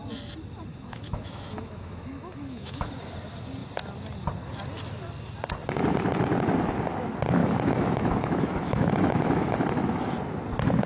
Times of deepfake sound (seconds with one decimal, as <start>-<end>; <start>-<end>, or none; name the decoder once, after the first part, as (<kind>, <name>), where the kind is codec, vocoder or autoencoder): 0.7-2.9 (autoencoder, DAC-VAE); 7.4-10.1